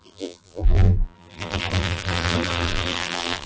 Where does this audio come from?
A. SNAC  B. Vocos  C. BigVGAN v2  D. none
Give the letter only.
C